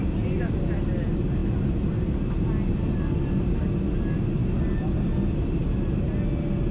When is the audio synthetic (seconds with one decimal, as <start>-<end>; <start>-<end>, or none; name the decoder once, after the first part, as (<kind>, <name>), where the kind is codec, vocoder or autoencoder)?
none